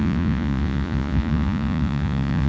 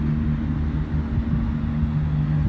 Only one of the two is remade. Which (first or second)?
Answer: first